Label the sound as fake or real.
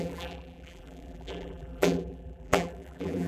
fake